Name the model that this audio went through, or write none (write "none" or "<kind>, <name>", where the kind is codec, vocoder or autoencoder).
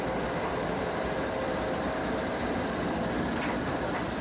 vocoder, BigVGAN v2